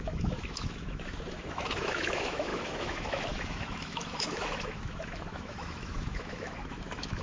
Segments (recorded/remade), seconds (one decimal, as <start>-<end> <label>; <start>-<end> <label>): 0.0-7.2 remade